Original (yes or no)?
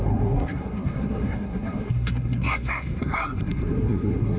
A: no